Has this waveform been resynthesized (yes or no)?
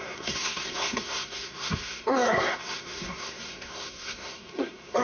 yes